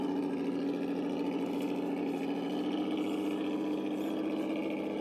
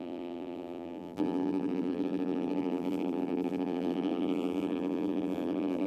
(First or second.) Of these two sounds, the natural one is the first